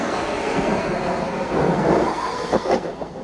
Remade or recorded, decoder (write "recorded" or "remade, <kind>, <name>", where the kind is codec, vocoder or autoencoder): remade, codec, SNAC